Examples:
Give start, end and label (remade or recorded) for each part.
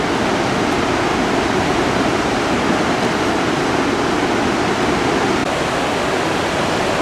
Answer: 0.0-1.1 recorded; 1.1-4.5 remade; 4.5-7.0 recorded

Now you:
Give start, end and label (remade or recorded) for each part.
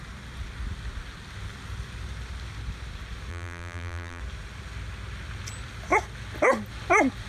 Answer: 0.0-3.3 recorded; 3.3-4.2 remade; 4.2-7.3 recorded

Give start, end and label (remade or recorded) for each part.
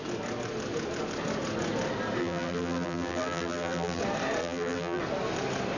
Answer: 0.0-2.2 recorded; 2.2-4.0 remade; 4.0-4.4 recorded; 4.4-5.0 remade; 5.0-5.8 recorded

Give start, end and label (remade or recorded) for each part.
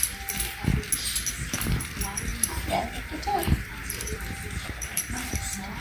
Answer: 0.0-2.3 recorded; 2.3-5.8 remade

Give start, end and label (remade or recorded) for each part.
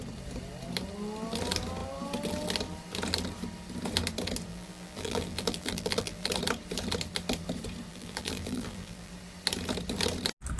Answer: 0.0-4.5 recorded; 4.5-6.3 remade; 6.3-7.9 recorded; 7.9-9.1 remade; 9.1-10.6 recorded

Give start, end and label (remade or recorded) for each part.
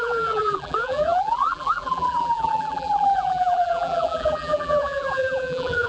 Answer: 0.0-5.9 remade